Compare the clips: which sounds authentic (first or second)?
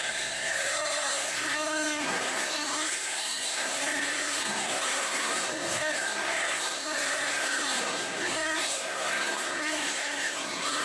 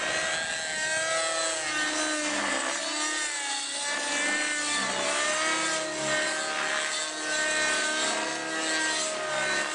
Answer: second